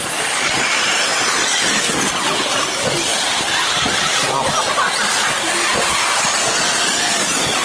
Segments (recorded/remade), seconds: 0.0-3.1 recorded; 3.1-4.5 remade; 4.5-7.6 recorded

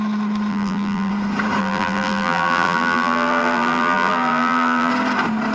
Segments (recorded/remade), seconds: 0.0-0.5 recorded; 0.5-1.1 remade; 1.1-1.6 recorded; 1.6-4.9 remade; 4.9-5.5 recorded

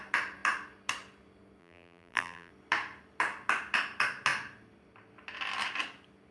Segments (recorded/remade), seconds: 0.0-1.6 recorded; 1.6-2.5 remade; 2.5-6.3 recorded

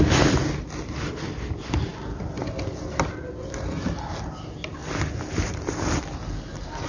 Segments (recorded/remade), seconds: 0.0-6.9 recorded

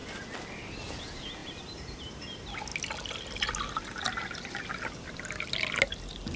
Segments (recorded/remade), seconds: 0.0-1.4 recorded; 1.4-2.1 remade; 2.1-6.4 recorded

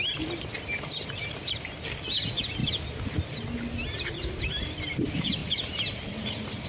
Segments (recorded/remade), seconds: 0.0-5.4 recorded; 5.4-6.1 remade; 6.1-6.7 recorded

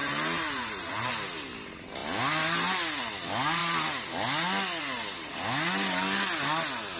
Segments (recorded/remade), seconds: 0.0-1.1 remade; 1.1-7.0 recorded